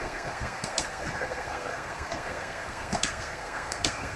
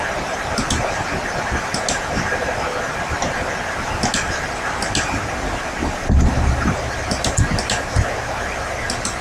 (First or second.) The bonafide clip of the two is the second